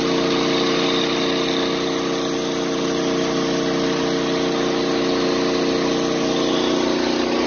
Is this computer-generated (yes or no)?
no